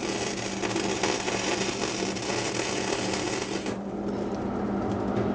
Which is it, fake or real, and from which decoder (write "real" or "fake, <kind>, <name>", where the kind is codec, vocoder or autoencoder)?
real